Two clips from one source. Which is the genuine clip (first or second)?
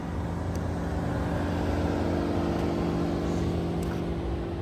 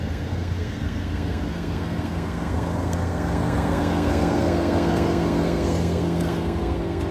first